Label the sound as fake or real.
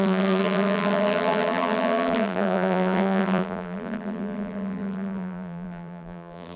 fake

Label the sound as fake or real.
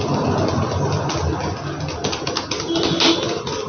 real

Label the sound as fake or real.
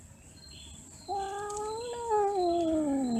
real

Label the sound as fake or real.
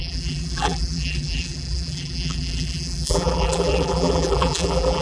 fake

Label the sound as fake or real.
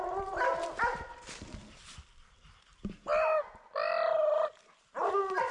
real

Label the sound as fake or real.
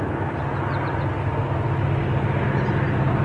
real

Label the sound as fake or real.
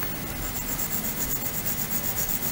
real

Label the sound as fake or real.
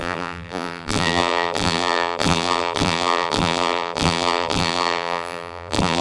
fake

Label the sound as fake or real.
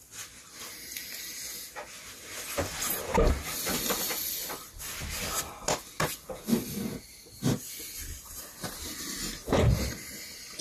real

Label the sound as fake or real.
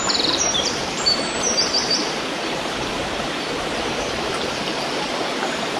fake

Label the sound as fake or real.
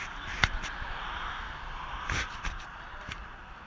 real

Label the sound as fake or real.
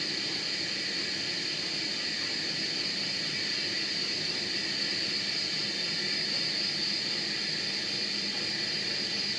real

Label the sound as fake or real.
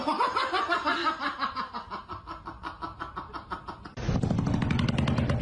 real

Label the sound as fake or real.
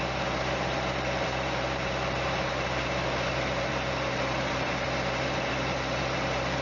fake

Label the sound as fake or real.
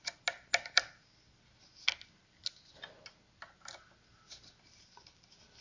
real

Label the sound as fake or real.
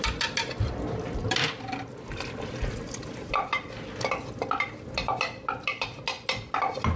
real